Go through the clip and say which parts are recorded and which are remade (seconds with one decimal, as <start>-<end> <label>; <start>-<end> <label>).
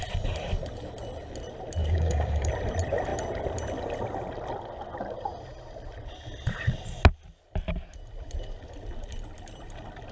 0.0-1.8 recorded; 1.8-2.5 remade; 2.5-10.1 recorded